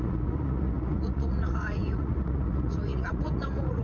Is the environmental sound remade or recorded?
remade